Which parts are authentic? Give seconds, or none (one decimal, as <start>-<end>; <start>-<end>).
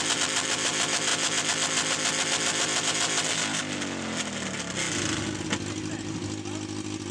0.0-7.1